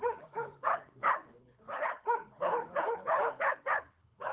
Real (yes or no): no